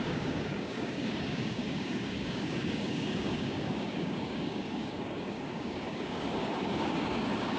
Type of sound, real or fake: fake